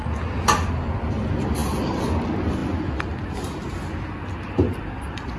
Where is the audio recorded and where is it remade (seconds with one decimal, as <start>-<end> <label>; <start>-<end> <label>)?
0.0-5.4 recorded